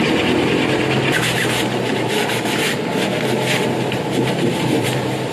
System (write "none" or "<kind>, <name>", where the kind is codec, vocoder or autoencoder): none